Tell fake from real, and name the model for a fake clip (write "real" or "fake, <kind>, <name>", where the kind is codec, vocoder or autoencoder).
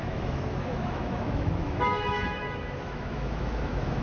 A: fake, autoencoder, DAC-VAE